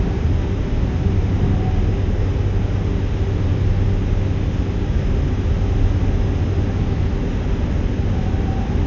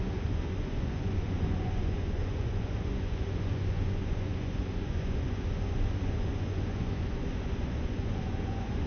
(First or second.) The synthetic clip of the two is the second